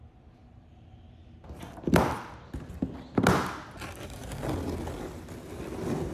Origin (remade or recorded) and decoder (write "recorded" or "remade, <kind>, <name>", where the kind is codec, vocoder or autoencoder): recorded